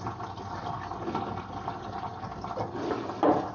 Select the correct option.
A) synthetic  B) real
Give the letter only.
B